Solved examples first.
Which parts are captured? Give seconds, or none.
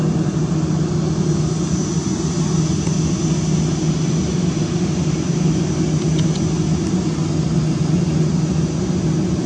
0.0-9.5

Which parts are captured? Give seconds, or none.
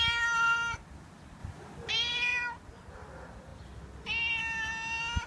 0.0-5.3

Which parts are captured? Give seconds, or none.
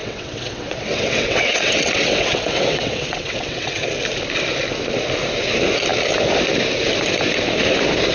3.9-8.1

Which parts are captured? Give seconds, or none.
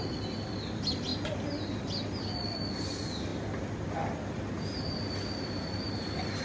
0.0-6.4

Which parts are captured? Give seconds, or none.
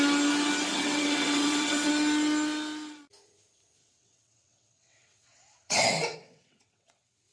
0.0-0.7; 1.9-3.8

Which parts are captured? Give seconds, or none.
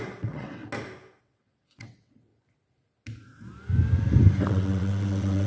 0.6-1.2; 2.3-4.4